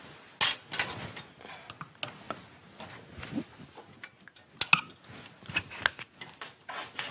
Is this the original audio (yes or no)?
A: yes